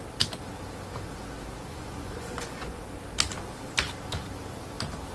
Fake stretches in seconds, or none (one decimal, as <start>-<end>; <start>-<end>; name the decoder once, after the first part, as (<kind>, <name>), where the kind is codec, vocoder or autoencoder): 1.7-2.8 (vocoder, Vocos)